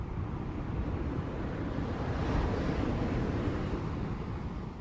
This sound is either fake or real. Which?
fake